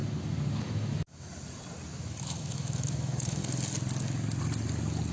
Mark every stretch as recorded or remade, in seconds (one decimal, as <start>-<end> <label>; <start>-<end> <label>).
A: 0.0-0.6 recorded; 0.6-1.3 remade; 1.3-1.9 recorded; 1.9-3.4 remade; 3.4-5.1 recorded